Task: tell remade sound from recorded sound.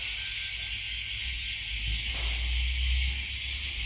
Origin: recorded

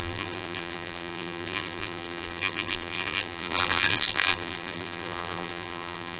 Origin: remade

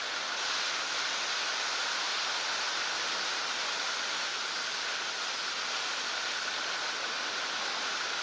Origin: recorded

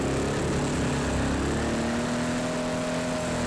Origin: recorded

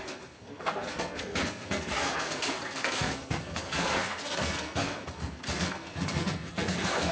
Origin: remade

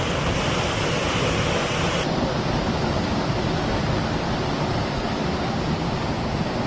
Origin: recorded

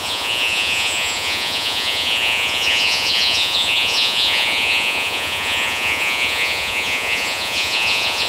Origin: remade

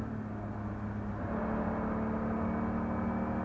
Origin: recorded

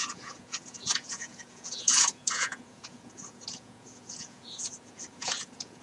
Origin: remade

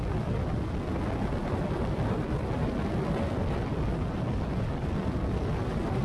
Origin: recorded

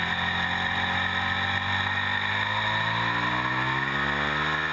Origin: recorded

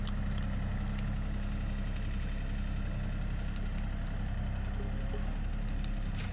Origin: recorded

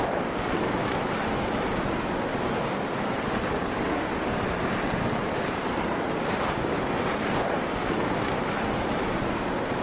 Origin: recorded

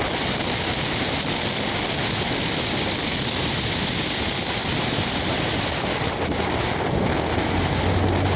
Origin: recorded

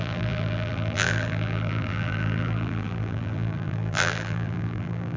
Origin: remade